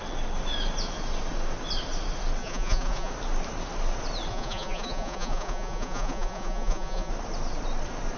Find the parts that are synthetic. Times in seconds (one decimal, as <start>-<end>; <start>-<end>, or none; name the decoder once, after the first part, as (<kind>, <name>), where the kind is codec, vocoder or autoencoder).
2.4-3.1 (vocoder, Vocos); 4.3-7.1